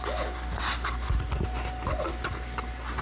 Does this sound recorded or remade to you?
recorded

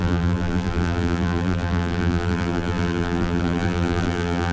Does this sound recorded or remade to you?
remade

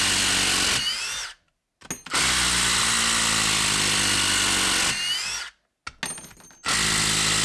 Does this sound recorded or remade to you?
recorded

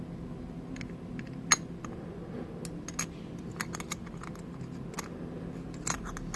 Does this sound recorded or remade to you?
recorded